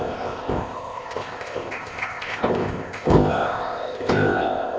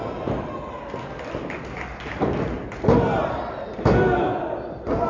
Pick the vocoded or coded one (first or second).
first